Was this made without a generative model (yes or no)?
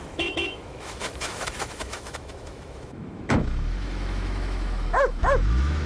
no